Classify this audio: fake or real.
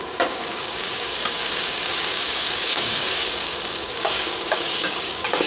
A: fake